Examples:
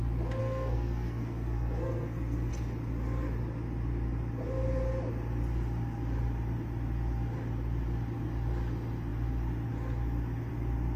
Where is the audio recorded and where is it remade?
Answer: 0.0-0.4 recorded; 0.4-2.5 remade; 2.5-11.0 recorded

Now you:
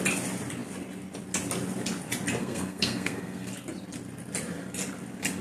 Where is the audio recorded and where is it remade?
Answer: 0.0-2.4 recorded; 2.4-3.5 remade; 3.5-5.4 recorded

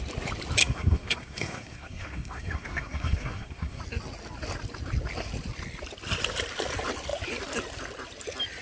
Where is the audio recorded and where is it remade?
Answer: 0.0-0.6 recorded; 0.6-3.8 remade; 3.8-8.6 recorded

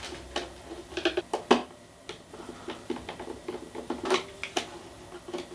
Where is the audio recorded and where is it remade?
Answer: 0.0-5.5 recorded

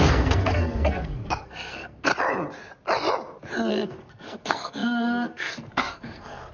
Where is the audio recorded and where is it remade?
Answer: 0.0-2.1 remade; 2.1-3.7 recorded; 3.7-6.5 remade

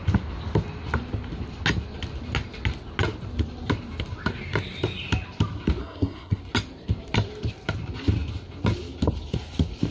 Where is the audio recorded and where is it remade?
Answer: 0.0-5.8 recorded; 5.8-6.4 remade; 6.4-9.9 recorded

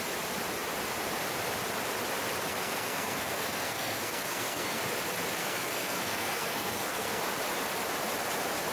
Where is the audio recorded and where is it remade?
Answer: 0.0-2.5 recorded; 2.5-4.8 remade; 4.8-5.4 recorded; 5.4-7.2 remade; 7.2-8.7 recorded

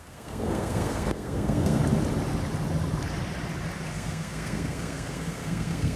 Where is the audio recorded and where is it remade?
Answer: 0.0-1.8 remade; 1.8-3.9 recorded; 3.9-6.0 remade